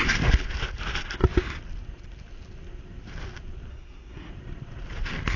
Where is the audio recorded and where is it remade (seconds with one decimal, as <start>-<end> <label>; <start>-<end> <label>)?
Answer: 0.0-3.7 recorded; 3.7-4.3 remade; 4.3-5.4 recorded